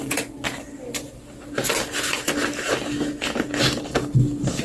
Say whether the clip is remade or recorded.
recorded